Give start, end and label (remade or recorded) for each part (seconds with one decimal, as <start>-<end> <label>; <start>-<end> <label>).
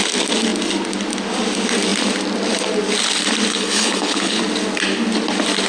0.0-3.5 recorded; 3.5-4.4 remade; 4.4-5.7 recorded